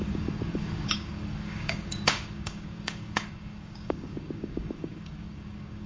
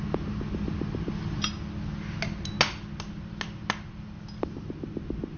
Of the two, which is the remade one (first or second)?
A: first